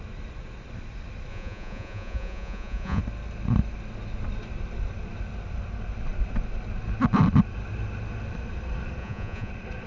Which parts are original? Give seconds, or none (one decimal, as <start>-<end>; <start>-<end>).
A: 0.0-1.3; 3.0-9.0; 9.5-9.9